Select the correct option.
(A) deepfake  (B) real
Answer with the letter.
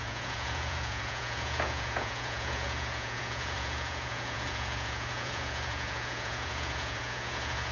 A